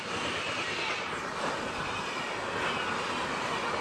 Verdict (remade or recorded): recorded